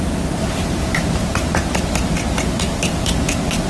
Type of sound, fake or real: fake